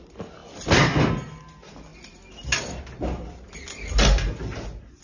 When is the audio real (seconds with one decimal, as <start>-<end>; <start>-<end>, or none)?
0.0-5.0